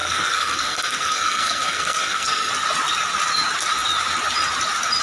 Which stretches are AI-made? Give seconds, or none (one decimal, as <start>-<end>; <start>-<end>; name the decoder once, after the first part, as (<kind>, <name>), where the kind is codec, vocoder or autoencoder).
0.0-2.5 (codec, SNAC)